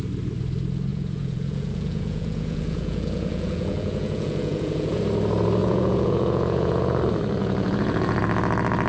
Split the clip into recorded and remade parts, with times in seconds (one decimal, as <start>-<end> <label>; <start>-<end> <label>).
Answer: 0.0-0.9 recorded; 0.9-5.0 remade; 5.0-5.6 recorded; 5.6-7.0 remade; 7.0-7.4 recorded; 7.4-8.2 remade; 8.2-8.9 recorded